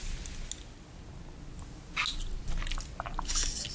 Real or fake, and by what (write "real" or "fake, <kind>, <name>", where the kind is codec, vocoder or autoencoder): real